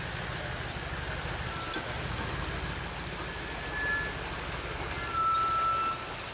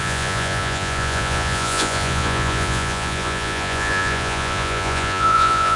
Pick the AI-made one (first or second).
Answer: second